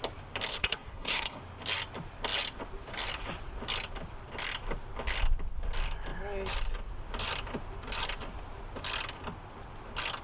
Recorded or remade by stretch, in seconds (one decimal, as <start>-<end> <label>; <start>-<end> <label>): 0.0-0.5 recorded; 0.5-1.4 remade; 1.4-10.2 recorded